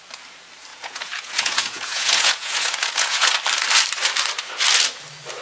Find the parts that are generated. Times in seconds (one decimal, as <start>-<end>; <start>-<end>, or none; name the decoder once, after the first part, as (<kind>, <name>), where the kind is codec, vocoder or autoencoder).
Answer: 0.7-3.3 (vocoder, Vocos)